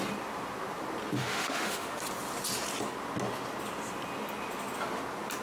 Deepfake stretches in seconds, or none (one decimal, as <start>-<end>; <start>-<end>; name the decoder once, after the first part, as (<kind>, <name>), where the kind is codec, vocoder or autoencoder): 1.2-2.0 (autoencoder, DAC-VAE)